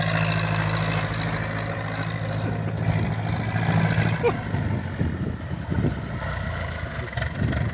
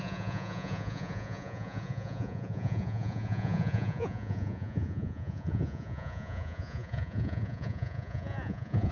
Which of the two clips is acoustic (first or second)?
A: first